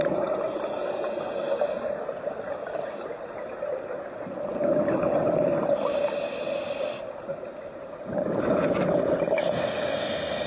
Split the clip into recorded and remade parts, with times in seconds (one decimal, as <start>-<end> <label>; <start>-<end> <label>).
0.0-10.5 recorded

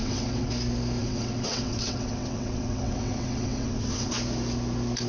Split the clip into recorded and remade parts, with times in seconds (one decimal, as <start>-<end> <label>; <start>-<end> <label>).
0.0-0.5 remade; 0.5-1.0 recorded; 1.0-4.1 remade; 4.1-5.1 recorded

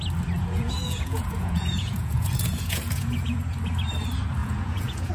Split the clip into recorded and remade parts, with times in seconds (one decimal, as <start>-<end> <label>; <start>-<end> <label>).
0.0-0.4 recorded; 0.4-3.4 remade; 3.4-4.4 recorded; 4.4-5.1 remade

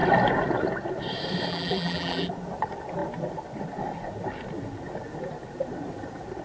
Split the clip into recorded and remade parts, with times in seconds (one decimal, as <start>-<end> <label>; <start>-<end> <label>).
0.0-1.5 recorded; 1.5-2.3 remade; 2.3-6.4 recorded

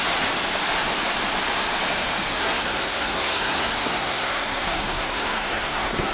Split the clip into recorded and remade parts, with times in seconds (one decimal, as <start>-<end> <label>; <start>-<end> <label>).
0.0-2.3 recorded; 2.3-6.1 remade

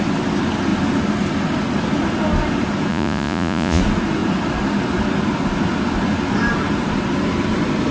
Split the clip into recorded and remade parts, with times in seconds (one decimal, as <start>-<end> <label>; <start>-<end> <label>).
0.0-2.9 recorded; 2.9-3.8 remade; 3.8-7.9 recorded

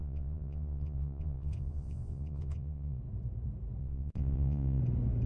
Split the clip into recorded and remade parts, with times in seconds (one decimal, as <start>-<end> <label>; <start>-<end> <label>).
0.0-3.0 remade; 3.0-3.8 recorded; 3.8-4.8 remade; 4.8-5.3 recorded

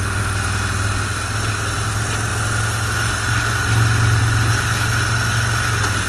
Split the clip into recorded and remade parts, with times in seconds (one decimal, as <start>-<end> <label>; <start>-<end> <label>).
0.0-6.1 recorded